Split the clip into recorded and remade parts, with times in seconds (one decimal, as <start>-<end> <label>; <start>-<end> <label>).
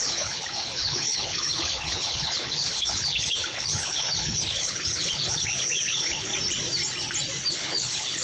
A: 0.0-6.3 remade; 6.3-7.5 recorded; 7.5-8.2 remade